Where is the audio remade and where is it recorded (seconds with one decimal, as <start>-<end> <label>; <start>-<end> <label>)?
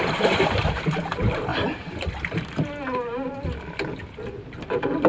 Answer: 0.0-1.5 remade; 1.5-4.6 recorded; 4.6-5.1 remade